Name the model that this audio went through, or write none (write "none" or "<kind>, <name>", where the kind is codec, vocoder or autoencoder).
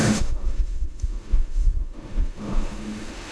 autoencoder, DAC-VAE